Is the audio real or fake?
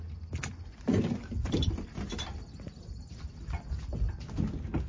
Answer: real